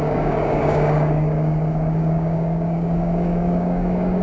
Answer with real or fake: fake